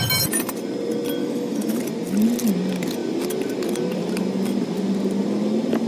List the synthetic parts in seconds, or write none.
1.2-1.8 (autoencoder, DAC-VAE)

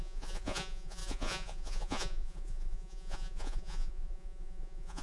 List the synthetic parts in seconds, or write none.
0.0-5.0 (vocoder, Vocos)

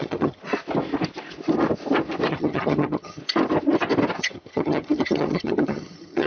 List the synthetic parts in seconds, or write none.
0.0-0.4 (vocoder, HiFi-GAN); 2.3-3.2; 4.2-6.3

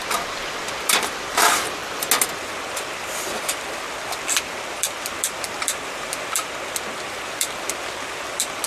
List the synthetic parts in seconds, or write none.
0.0-1.8 (vocoder, BigVGAN v2); 2.3-6.4; 7.1-8.7

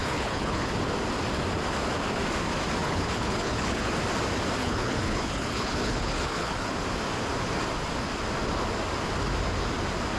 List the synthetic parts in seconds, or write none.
0.0-0.7 (codec, HILCodec); 2.8-3.9; 4.6-6.7

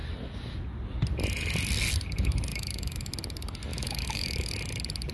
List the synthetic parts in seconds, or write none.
2.5-3.1 (autoencoder, DAC-VAE); 3.7-4.5